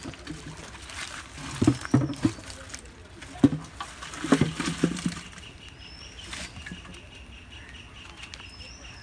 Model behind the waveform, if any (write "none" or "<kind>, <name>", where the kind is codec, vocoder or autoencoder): none